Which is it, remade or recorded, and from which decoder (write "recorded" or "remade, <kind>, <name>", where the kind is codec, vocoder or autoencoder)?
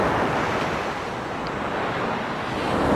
recorded